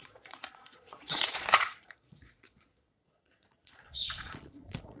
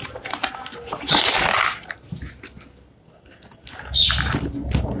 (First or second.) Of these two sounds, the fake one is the first